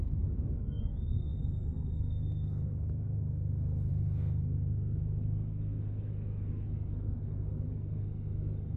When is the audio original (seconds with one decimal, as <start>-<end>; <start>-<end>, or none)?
none